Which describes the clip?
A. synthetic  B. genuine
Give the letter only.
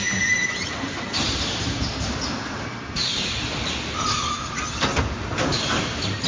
B